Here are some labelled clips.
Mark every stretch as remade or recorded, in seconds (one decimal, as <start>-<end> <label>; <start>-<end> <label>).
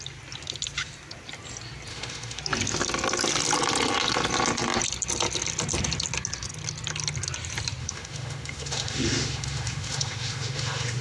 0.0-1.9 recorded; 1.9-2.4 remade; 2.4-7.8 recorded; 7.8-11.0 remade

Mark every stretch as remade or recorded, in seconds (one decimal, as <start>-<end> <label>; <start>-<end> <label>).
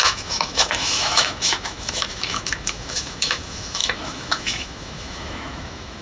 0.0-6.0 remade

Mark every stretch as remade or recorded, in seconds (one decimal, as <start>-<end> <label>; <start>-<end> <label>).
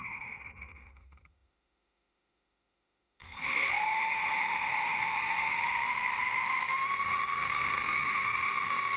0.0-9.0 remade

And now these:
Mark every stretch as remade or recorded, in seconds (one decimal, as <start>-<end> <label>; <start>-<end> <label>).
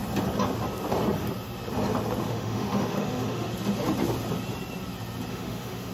0.0-2.2 recorded; 2.2-3.5 remade; 3.5-5.3 recorded; 5.3-5.9 remade